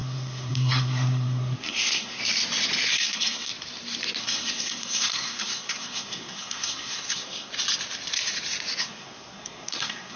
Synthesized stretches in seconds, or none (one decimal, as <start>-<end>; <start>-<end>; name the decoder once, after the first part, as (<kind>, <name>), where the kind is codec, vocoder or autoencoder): 0.0-2.2 (codec, SNAC); 2.9-3.5; 4.2-7.5; 8.8-10.2